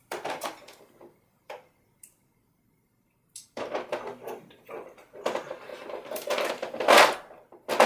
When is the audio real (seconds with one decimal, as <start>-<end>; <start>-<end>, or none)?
0.0-5.7; 6.5-7.9